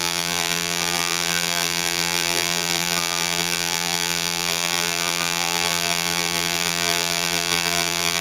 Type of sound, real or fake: fake